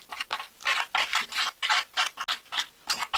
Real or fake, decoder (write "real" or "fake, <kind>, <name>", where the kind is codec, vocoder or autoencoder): real